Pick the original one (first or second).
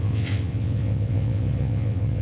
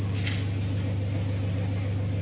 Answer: second